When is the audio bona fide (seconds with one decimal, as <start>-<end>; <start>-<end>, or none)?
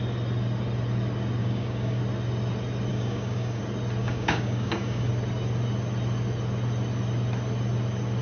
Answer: 0.0-1.4; 2.0-2.9; 3.6-4.0; 5.1-8.2